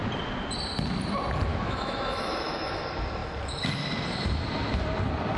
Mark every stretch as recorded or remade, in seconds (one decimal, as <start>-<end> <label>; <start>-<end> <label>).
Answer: 0.0-1.5 recorded; 1.5-2.8 remade; 2.8-5.4 recorded